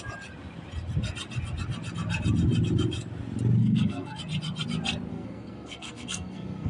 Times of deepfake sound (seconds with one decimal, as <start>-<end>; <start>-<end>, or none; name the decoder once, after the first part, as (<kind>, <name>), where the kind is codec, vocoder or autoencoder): 3.6-4.2 (codec, SNAC); 5.1-6.7